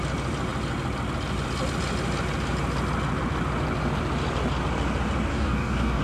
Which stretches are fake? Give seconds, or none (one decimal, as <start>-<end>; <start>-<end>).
5.3-6.0